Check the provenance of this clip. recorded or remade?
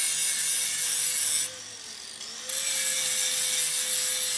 recorded